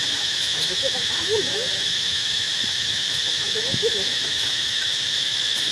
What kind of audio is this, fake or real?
fake